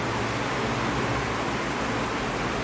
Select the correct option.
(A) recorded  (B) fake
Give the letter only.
A